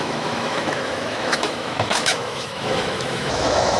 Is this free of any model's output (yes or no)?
no